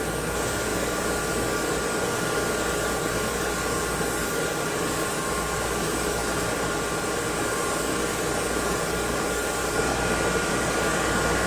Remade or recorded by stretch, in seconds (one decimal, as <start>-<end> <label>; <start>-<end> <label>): 0.0-6.2 remade; 6.2-7.3 recorded; 7.3-9.9 remade; 9.9-10.5 recorded; 10.5-11.5 remade